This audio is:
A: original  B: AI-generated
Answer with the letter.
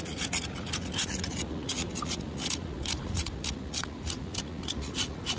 B